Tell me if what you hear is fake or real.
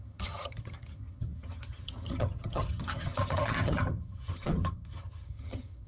fake